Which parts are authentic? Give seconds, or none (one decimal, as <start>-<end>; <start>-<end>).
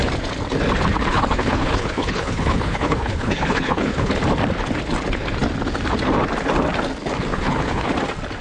0.0-1.1; 4.1-7.3; 7.9-8.4